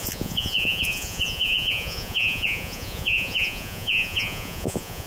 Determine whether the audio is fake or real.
fake